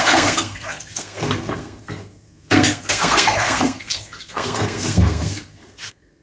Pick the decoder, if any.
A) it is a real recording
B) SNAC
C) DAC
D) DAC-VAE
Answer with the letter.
B